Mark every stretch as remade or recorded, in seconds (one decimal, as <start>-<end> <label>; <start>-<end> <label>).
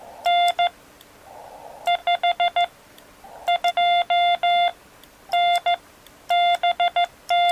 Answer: 0.0-7.5 recorded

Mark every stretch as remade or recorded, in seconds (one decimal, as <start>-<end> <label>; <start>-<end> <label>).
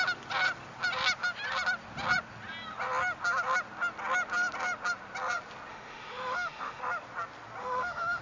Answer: 0.0-5.7 recorded; 5.7-6.8 remade; 6.8-7.6 recorded; 7.6-8.2 remade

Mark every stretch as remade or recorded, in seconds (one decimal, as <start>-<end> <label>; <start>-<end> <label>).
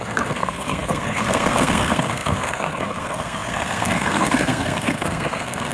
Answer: 0.0-5.7 remade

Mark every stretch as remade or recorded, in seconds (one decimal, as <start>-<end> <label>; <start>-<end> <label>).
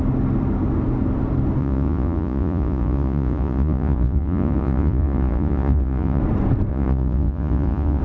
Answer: 0.0-1.6 recorded; 1.6-6.2 remade; 6.2-6.7 recorded; 6.7-8.0 remade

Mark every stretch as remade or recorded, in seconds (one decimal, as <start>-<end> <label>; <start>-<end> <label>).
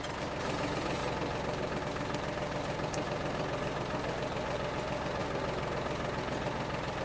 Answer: 0.0-7.0 recorded